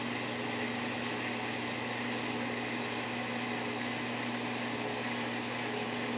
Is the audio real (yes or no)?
yes